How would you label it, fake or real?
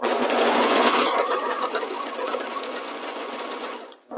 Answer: fake